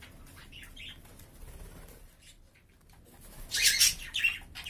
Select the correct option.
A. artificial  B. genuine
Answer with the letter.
B